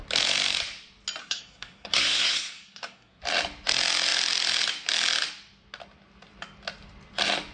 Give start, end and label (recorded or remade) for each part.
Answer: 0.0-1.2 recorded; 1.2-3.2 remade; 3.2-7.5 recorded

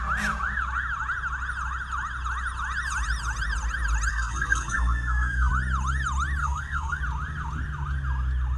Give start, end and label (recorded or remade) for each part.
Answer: 0.0-4.1 recorded; 4.1-5.5 remade; 5.5-6.4 recorded; 6.4-7.0 remade; 7.0-8.6 recorded

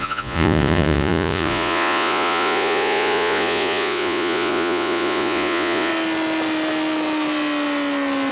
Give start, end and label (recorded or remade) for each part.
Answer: 0.0-5.9 remade; 5.9-8.3 recorded

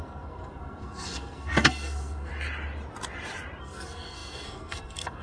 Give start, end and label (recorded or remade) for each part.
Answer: 0.0-2.3 remade; 2.3-3.6 recorded; 3.6-5.2 remade

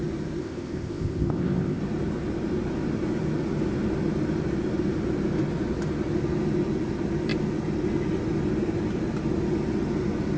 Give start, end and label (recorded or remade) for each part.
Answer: 0.0-0.4 recorded; 0.4-1.8 remade; 1.8-10.4 recorded

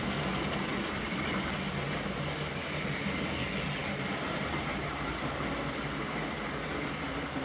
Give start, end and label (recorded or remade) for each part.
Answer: 0.0-0.7 recorded; 0.7-1.5 remade; 1.5-3.8 recorded; 3.8-4.8 remade; 4.8-7.4 recorded